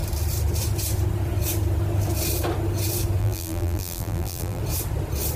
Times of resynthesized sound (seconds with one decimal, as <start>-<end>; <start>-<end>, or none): 3.2-4.6